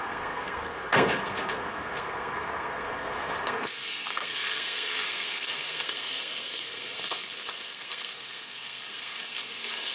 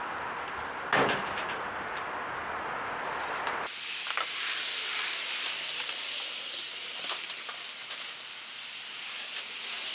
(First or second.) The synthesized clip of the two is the first